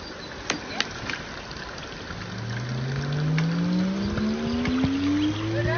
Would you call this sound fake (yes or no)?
no